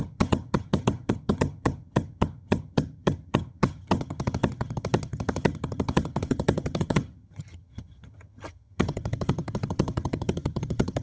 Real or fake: fake